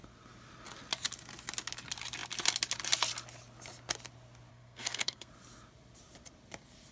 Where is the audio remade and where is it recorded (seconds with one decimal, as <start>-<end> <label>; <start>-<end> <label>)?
0.0-4.5 recorded; 4.5-5.3 remade; 5.3-6.9 recorded